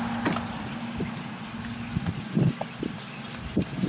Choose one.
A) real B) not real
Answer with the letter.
A